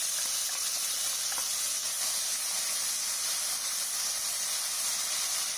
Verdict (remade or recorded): recorded